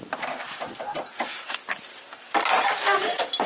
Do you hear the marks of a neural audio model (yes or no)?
no